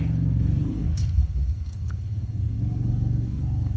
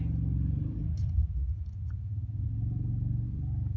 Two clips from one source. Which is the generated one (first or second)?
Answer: first